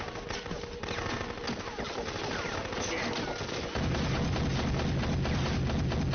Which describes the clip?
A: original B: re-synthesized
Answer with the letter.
A